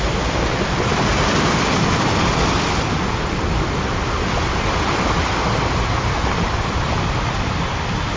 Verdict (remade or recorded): recorded